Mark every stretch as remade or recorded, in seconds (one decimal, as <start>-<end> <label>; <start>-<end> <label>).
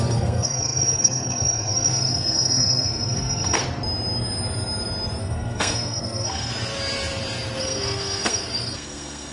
0.0-3.6 remade; 3.6-5.2 recorded; 5.2-6.5 remade; 6.5-7.6 recorded; 7.6-9.3 remade